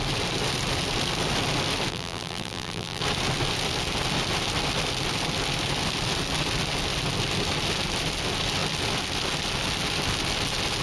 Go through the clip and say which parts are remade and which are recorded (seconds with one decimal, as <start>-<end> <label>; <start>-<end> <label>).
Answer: 0.0-1.9 recorded; 1.9-3.0 remade; 3.0-10.8 recorded